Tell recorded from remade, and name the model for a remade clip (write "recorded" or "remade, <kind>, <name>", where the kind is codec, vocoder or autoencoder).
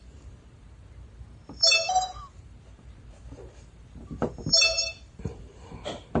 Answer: remade, vocoder, BigVGAN v2